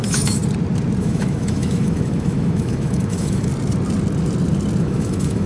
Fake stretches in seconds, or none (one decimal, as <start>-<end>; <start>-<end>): 0.0-0.4; 1.0-3.5; 4.8-5.5